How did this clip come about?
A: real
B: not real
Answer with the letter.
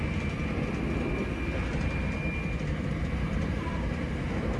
A